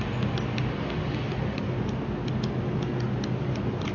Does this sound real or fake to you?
real